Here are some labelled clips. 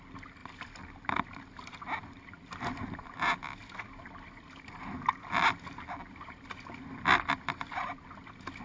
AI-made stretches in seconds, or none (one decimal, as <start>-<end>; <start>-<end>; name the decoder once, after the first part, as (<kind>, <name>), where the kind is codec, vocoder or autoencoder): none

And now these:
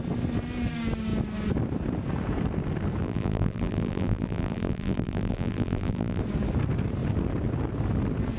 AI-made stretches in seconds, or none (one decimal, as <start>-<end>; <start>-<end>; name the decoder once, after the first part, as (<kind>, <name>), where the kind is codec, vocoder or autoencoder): 3.0-6.2 (vocoder, BigVGAN v2)

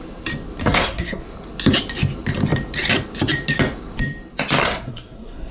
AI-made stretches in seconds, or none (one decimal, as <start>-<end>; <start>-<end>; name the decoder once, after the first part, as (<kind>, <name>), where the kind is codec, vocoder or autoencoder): 0.6-1.2 (codec, SNAC); 4.6-5.5